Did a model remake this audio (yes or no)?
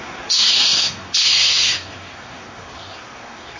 yes